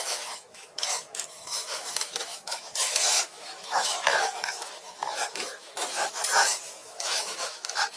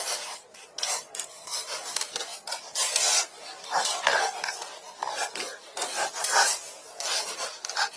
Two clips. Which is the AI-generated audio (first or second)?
first